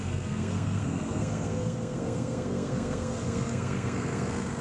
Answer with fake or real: fake